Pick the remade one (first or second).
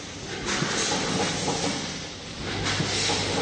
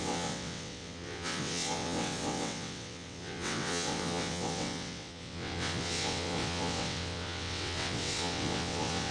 second